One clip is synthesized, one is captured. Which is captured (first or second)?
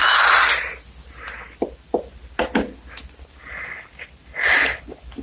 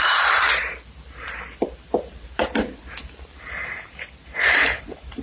first